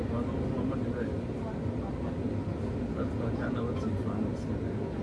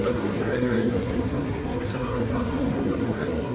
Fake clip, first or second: second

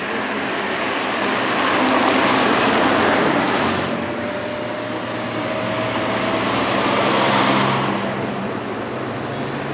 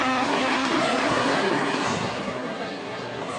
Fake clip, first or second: second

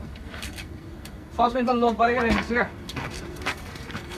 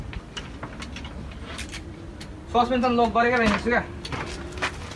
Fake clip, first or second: first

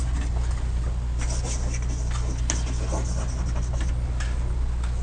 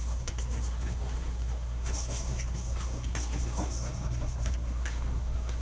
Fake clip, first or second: second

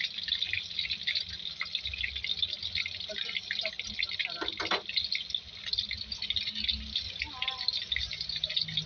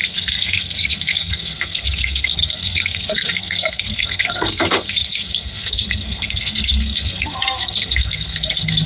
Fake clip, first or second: second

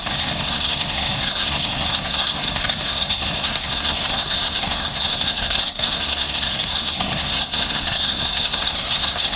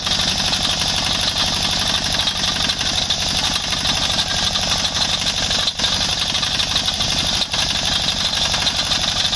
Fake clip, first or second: first